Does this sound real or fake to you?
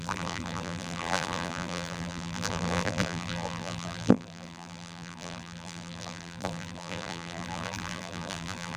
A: fake